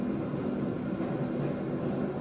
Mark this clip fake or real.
real